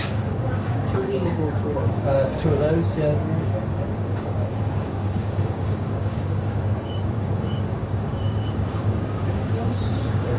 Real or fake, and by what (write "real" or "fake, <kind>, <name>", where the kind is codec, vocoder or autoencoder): fake, codec, DAC